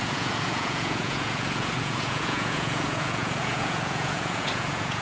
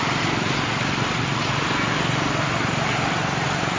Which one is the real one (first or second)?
second